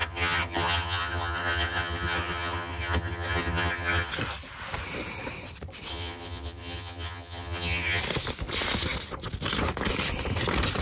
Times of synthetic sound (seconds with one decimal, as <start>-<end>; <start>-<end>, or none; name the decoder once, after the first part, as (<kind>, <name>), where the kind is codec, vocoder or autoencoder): 0.0-4.1 (vocoder, HiFi-GAN); 5.9-8.0